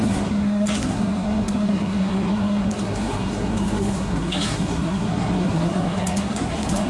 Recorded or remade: remade